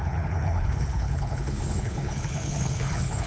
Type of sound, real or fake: fake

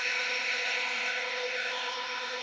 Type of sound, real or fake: fake